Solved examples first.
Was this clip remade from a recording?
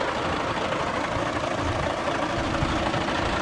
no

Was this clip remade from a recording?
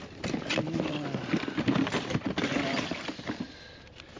no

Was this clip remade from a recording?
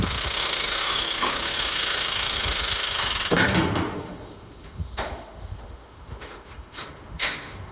yes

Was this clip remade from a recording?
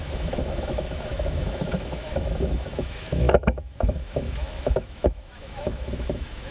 yes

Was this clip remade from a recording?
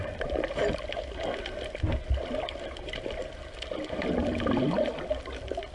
no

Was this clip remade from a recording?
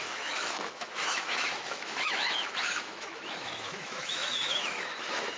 yes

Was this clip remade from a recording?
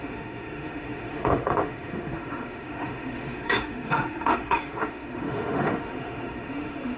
yes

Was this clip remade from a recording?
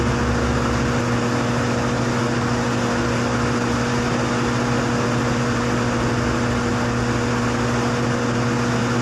no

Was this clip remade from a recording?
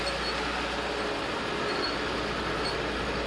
no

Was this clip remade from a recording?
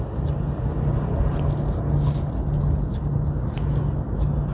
no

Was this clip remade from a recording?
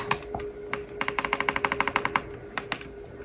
no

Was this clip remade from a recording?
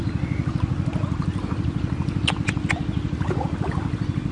no